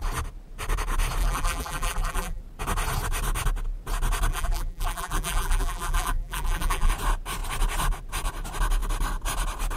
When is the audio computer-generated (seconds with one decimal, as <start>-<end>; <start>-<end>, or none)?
1.2-2.4; 4.3-6.9